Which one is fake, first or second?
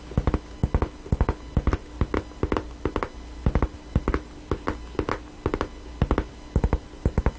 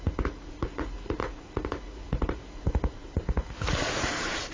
second